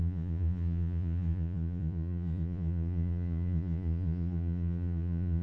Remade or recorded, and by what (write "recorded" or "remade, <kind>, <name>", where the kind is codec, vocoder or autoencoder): remade, vocoder, Vocos